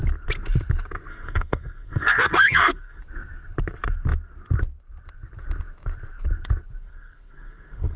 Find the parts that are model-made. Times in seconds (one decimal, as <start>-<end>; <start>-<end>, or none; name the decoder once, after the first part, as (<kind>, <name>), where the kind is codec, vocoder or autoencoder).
1.1-3.0 (codec, SNAC); 6.8-8.0